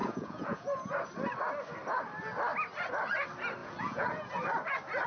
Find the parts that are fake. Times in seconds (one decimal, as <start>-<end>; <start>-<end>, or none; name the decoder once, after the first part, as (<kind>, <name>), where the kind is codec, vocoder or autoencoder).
0.0-0.9 (vocoder, Vocos); 3.6-4.3